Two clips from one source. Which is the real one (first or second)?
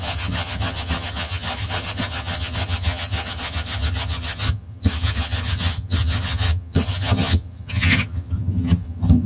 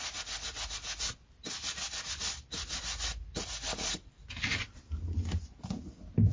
second